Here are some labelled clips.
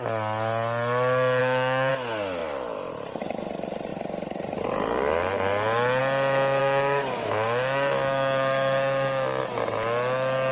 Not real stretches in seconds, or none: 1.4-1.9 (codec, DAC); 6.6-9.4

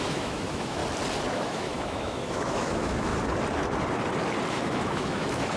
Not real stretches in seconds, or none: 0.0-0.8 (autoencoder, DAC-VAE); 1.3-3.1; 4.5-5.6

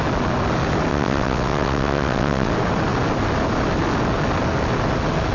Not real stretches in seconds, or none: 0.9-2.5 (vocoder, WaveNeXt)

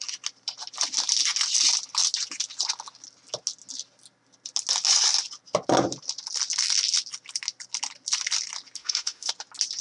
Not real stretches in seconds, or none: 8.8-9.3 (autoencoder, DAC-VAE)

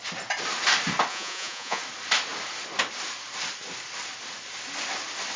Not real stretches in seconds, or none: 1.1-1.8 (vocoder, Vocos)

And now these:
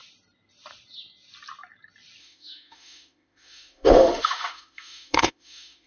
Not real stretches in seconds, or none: 2.2-5.9 (autoencoder, DAC-VAE)